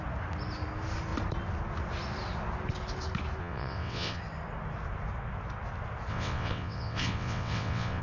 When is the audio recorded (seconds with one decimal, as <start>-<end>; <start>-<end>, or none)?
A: 0.0-3.4; 4.2-6.1